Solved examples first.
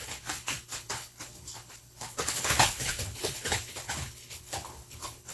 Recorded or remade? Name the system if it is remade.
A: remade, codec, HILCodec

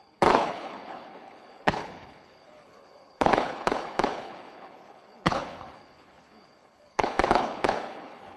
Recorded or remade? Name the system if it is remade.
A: remade, codec, HILCodec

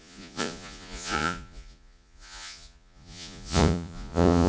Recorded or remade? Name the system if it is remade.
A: remade, vocoder, Vocos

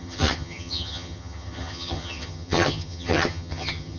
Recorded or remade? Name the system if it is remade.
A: remade, vocoder, HiFi-GAN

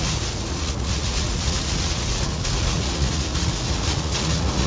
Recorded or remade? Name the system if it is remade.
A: remade, vocoder, Vocos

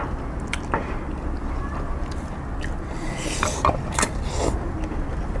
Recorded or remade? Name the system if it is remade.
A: remade, vocoder, BigVGAN v2